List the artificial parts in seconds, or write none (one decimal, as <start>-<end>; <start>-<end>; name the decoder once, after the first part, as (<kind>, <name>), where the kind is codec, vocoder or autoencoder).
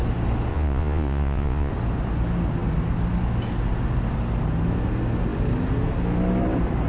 0.5-1.7 (vocoder, Vocos)